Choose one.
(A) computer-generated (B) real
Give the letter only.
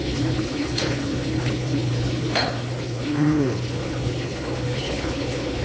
A